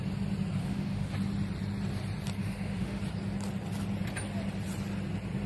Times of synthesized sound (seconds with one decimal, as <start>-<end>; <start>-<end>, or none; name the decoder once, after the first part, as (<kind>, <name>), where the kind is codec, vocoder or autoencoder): 0.6-1.1 (autoencoder, DAC-VAE); 2.4-3.0